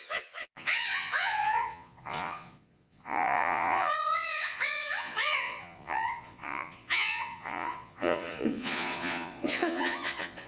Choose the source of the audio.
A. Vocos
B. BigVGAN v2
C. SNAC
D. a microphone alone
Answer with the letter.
A